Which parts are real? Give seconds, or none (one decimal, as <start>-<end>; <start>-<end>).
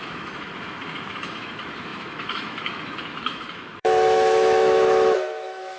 none